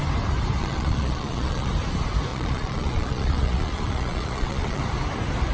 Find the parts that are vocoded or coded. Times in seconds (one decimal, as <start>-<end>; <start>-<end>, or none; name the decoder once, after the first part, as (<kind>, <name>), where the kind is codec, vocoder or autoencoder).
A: 0.6-1.7 (vocoder, Vocos); 2.3-4.8